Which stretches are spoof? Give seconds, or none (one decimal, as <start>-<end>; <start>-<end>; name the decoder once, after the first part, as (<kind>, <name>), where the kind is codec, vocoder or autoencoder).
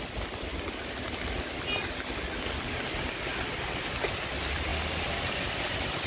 none